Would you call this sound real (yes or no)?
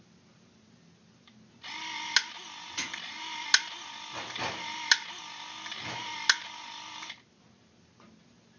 yes